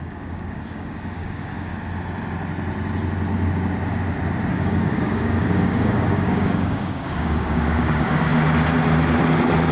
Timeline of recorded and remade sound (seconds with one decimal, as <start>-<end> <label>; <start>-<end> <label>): 0.0-1.7 remade; 1.7-4.5 recorded; 4.5-8.3 remade; 8.3-9.7 recorded